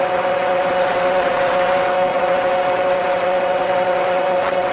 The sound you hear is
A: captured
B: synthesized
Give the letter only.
B